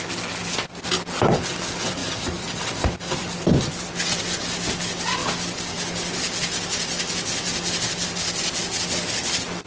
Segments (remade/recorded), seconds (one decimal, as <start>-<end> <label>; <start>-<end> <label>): 0.0-2.0 recorded; 2.0-3.7 remade; 3.7-9.7 recorded